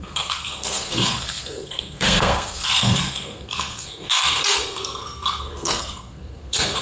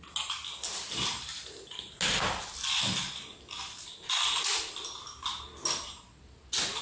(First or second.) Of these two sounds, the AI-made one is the first